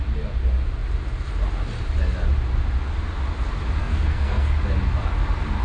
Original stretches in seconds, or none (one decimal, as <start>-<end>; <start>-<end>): 0.0-3.8; 4.5-5.6